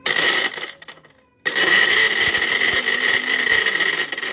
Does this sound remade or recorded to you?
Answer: recorded